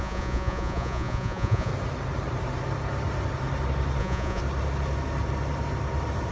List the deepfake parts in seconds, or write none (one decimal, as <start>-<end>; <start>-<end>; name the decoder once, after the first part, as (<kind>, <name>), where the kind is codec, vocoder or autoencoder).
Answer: 0.0-1.7 (vocoder, Vocos); 4.0-4.4